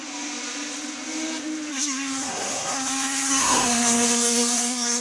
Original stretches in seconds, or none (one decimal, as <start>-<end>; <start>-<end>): 0.0-1.7